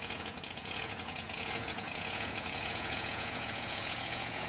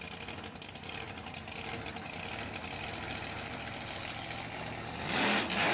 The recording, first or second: second